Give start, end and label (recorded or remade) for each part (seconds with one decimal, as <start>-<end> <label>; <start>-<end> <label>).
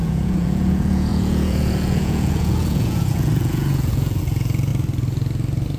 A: 0.0-4.7 remade; 4.7-5.8 recorded